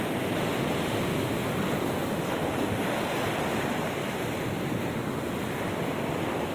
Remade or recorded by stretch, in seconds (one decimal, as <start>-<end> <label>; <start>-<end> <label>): 0.0-6.5 recorded